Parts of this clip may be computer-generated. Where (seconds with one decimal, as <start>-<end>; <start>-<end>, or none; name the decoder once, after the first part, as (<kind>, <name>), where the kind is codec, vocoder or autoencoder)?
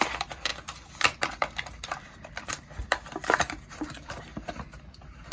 0.0-5.3 (vocoder, BigVGAN v2)